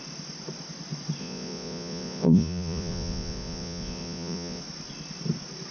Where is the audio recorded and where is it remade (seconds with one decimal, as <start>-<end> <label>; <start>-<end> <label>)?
0.0-1.2 recorded; 1.2-4.6 remade; 4.6-5.7 recorded